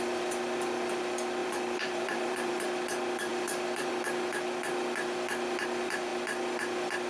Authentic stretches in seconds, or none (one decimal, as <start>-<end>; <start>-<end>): 0.0-1.4; 2.5-7.1